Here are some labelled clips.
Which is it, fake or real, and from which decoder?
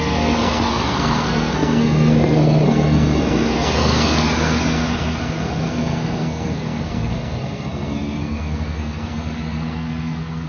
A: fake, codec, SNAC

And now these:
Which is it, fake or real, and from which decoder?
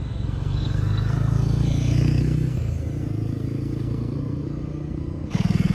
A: fake, codec, SNAC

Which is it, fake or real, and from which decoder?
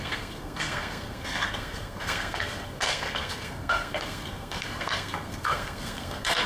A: fake, codec, SNAC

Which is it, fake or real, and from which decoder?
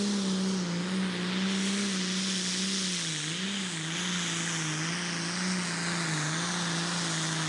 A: real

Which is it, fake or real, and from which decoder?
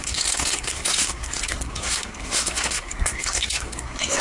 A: fake, codec, SNAC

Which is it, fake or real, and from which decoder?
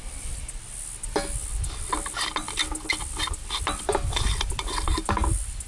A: real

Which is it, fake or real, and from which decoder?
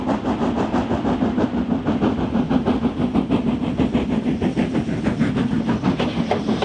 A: real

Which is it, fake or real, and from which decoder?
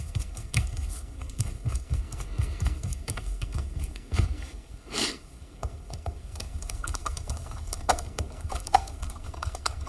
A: fake, codec, SNAC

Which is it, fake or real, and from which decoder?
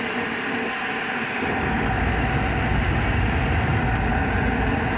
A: real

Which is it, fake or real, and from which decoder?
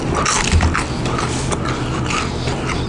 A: real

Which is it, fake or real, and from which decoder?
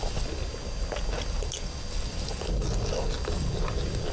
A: real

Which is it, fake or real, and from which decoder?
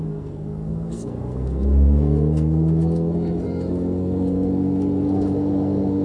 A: fake, codec, SNAC